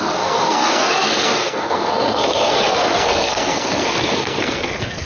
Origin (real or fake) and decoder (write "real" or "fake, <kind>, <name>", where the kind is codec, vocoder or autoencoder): fake, codec, SNAC